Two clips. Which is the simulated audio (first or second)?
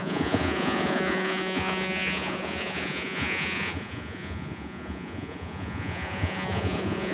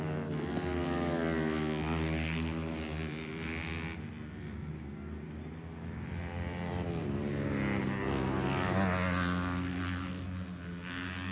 first